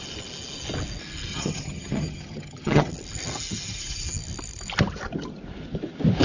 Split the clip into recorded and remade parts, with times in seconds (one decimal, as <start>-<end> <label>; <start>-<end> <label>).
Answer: 0.0-1.3 recorded; 1.3-2.9 remade; 2.9-6.2 recorded